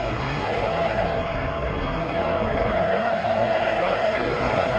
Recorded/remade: remade